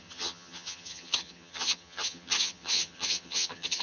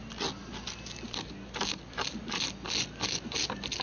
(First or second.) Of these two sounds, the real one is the second